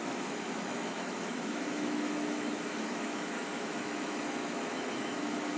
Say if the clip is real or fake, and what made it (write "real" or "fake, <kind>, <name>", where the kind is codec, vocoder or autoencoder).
fake, autoencoder, DAC-VAE